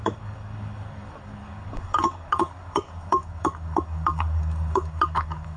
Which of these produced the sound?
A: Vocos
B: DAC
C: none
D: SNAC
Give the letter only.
B